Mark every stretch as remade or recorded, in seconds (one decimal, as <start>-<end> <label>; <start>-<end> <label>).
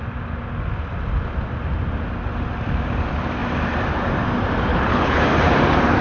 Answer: 0.0-4.7 recorded; 4.7-5.2 remade; 5.2-6.0 recorded